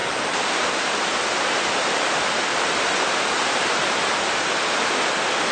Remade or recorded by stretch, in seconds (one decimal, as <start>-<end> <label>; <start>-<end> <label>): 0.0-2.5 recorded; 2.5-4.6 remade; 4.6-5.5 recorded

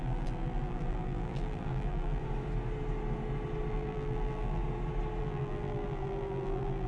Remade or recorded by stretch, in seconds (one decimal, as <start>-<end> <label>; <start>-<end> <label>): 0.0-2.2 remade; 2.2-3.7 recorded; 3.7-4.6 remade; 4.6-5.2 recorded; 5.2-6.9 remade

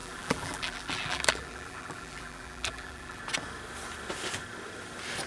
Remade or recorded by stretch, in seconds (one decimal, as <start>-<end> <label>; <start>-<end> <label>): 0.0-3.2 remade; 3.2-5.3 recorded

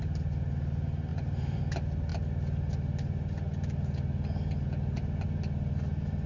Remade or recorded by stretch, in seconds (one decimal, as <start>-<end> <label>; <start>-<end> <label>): 0.0-1.1 recorded; 1.1-1.6 remade; 1.6-6.3 recorded